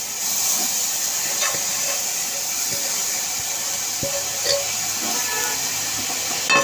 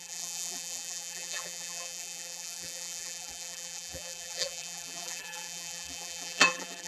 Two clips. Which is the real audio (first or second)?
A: first